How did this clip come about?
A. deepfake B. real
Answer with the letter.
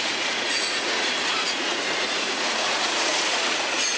A